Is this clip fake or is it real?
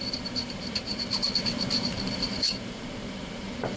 fake